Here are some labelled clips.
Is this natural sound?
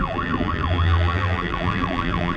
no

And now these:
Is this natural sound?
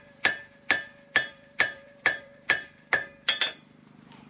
no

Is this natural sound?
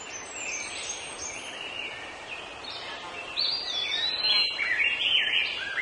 no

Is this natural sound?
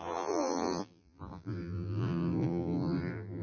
no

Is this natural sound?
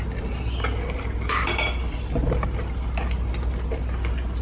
no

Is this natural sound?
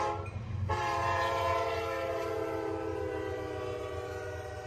no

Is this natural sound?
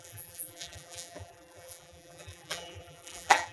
no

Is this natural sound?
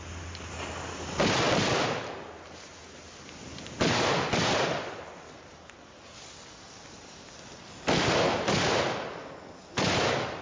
yes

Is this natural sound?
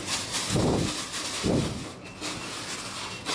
yes